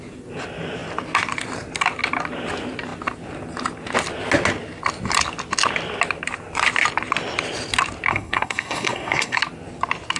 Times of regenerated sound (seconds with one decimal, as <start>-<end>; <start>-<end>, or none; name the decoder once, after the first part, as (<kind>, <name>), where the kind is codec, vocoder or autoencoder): 8.1-9.4 (codec, SNAC)

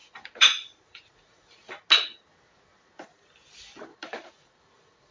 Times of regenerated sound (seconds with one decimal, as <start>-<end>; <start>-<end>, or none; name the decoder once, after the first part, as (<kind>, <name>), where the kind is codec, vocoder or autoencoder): 0.0-1.7 (vocoder, Vocos); 3.9-5.1

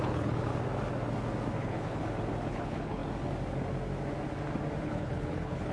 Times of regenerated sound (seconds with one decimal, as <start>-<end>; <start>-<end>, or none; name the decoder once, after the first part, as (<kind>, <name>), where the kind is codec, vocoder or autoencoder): 0.0-0.5 (codec, HILCodec); 1.6-2.0; 2.5-3.0; 4.8-5.7

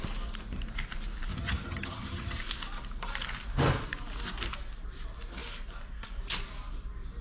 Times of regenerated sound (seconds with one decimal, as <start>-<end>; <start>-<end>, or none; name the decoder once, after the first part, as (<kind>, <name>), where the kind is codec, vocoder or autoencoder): 1.3-2.4 (vocoder, HiFi-GAN)

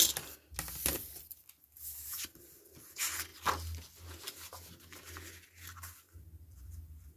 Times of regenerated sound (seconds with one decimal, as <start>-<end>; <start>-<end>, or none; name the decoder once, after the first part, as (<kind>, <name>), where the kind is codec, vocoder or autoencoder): none

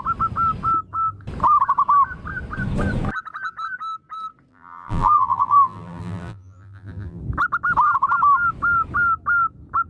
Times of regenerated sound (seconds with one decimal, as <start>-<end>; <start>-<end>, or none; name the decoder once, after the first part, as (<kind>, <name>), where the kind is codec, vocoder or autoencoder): 4.5-7.2 (vocoder, BigVGAN v2)

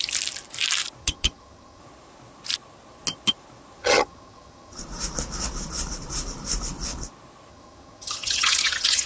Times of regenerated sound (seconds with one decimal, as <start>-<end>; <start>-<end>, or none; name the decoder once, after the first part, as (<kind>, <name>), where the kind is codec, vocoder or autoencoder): 1.0-1.8 (vocoder, HiFi-GAN); 3.8-4.8; 7.5-9.1